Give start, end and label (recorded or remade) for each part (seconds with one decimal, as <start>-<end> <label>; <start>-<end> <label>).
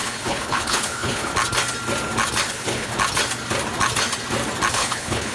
0.0-1.3 remade; 1.3-2.5 recorded; 2.5-2.9 remade; 2.9-4.7 recorded; 4.7-5.3 remade